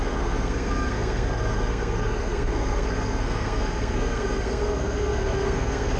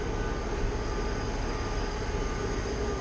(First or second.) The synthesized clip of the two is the first